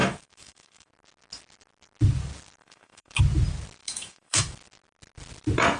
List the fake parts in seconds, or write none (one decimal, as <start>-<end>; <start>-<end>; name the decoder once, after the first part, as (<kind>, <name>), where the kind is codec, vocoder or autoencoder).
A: 0.0-0.9 (autoencoder, DAC-VAE); 2.6-3.2; 3.8-4.4